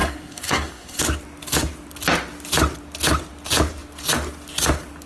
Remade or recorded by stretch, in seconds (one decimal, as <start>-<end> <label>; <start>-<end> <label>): 0.0-1.0 remade; 1.0-5.1 recorded